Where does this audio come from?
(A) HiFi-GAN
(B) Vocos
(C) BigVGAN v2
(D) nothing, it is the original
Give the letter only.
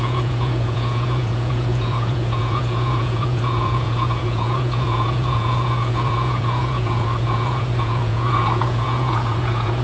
B